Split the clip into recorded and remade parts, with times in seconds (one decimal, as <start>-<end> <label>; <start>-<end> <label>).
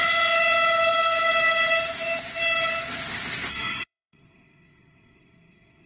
0.0-3.5 recorded; 3.5-5.9 remade